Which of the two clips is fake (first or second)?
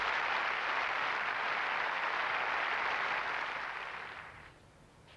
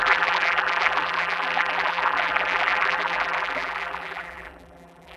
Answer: second